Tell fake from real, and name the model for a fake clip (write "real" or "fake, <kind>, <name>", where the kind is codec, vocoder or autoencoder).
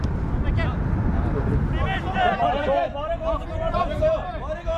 real